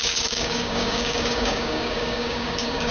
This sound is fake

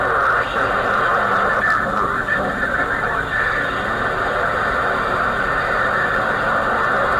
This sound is real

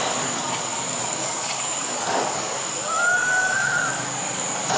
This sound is fake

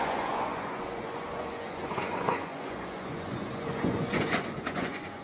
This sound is fake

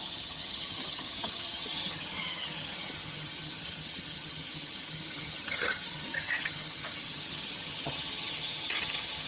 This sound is fake